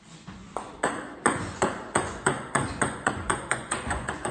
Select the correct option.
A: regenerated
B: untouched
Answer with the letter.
A